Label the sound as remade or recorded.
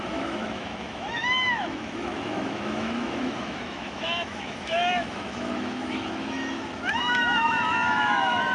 remade